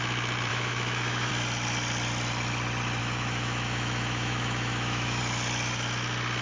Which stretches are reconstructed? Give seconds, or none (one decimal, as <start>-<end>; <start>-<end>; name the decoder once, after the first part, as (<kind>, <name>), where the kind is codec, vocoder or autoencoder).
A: 0.5-1.3 (autoencoder, DAC-VAE); 3.0-5.2